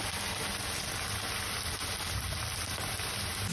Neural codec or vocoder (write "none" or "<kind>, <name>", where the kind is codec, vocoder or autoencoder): none